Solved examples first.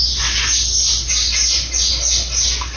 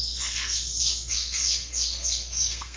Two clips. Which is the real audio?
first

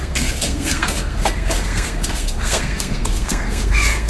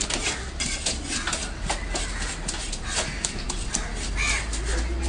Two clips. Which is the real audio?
second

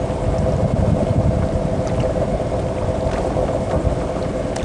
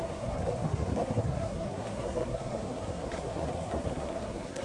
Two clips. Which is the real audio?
first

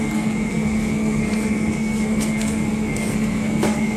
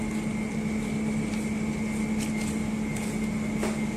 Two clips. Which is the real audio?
second